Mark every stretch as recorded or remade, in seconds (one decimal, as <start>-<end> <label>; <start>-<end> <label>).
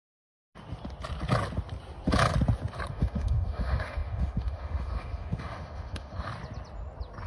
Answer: 0.0-2.9 recorded; 2.9-6.3 remade; 6.3-7.3 recorded